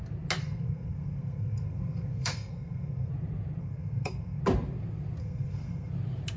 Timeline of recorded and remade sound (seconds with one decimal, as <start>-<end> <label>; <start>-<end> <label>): 0.0-0.4 recorded; 0.4-3.1 remade; 3.1-3.6 recorded; 3.6-4.4 remade; 4.4-5.2 recorded; 5.2-5.9 remade; 5.9-6.4 recorded

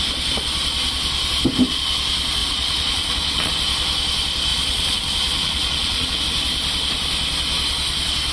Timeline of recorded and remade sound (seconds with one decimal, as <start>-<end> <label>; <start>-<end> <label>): 0.0-2.4 recorded; 2.4-3.5 remade; 3.5-4.5 recorded; 4.5-6.2 remade; 6.2-8.3 recorded

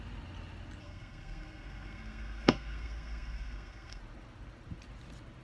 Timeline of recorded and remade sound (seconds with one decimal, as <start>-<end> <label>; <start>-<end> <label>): 0.0-0.8 recorded; 0.8-4.0 remade; 4.0-5.4 recorded